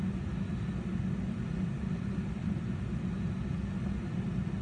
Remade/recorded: recorded